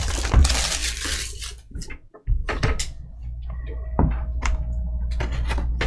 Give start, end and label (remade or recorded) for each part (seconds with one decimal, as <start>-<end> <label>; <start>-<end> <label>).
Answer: 0.0-5.9 recorded